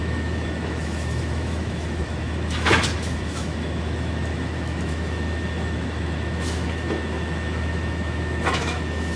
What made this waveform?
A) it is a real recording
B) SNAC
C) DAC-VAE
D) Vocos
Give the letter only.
C